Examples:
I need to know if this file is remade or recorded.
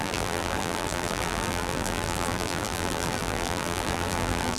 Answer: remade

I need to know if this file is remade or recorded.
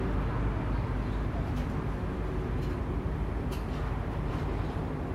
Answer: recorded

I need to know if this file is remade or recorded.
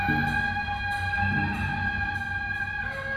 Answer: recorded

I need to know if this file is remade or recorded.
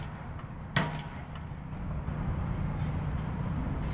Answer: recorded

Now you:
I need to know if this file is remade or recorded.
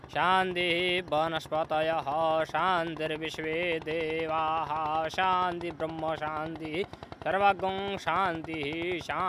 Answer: recorded